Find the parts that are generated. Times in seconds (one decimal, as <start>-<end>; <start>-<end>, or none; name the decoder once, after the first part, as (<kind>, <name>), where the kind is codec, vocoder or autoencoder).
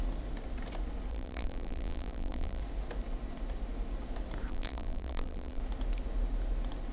1.1-2.6 (vocoder, BigVGAN v2); 4.5-5.6